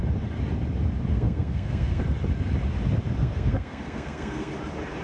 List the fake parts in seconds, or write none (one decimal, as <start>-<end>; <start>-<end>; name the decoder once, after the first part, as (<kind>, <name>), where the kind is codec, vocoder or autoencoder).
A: 1.1-2.0 (codec, SNAC); 3.2-4.5